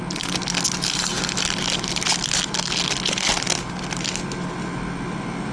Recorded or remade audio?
recorded